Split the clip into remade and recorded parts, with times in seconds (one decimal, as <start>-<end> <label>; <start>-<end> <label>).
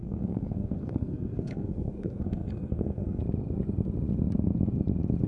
0.0-3.2 remade; 3.2-5.3 recorded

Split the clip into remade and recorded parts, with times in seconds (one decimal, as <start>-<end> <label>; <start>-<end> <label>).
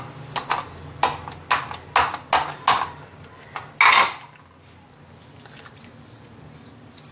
0.0-7.1 recorded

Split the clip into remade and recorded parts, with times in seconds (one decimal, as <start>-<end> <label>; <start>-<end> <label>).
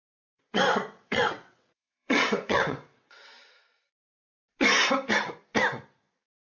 0.0-0.7 recorded; 0.7-3.3 remade; 3.3-6.5 recorded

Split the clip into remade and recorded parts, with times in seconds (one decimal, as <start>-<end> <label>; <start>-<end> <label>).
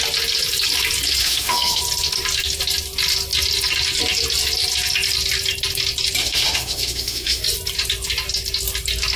0.0-1.2 recorded; 1.2-1.8 remade; 1.8-6.2 recorded; 6.2-7.4 remade; 7.4-9.2 recorded